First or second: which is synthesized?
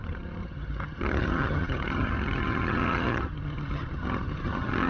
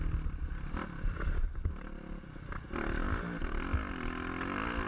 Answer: first